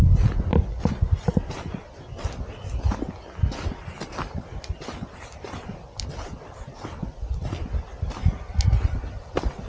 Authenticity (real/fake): real